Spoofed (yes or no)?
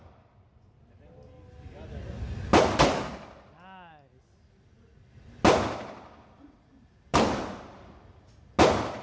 no